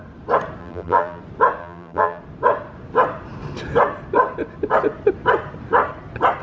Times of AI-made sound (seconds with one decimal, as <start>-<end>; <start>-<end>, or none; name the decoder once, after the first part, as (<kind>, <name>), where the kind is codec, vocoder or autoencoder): 0.6-1.2 (vocoder, BigVGAN v2); 1.6-2.2